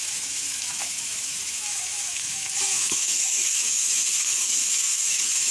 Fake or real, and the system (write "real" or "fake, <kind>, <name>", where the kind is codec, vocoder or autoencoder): fake, autoencoder, DAC-VAE